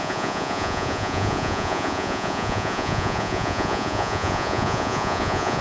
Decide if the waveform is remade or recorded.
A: remade